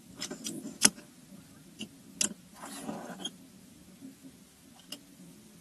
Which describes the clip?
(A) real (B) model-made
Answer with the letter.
A